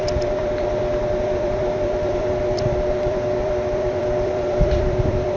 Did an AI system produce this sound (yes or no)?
yes